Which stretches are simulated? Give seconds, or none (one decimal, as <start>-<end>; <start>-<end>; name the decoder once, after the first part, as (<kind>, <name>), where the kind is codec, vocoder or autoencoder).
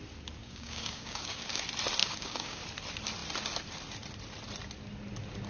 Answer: 0.4-1.6 (codec, DAC); 2.0-2.6